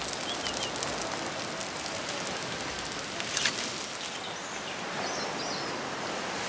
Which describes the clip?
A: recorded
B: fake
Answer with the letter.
A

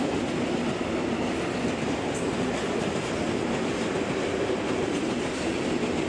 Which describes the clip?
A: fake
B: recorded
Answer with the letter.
B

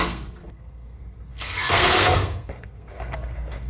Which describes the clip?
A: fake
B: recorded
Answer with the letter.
A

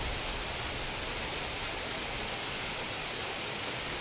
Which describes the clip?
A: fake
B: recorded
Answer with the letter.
B